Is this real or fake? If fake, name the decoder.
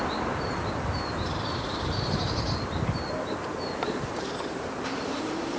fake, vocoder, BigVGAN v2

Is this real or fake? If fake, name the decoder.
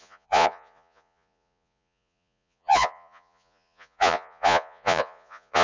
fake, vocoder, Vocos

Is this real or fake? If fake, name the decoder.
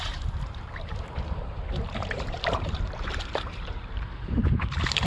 fake, vocoder, BigVGAN v2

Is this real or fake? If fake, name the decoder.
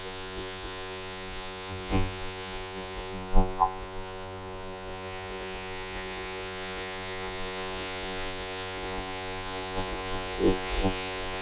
fake, vocoder, Vocos